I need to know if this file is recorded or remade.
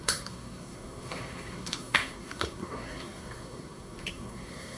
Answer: remade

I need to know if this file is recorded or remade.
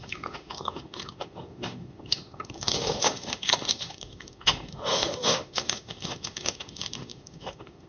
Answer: remade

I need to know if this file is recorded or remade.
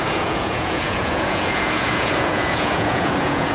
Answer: remade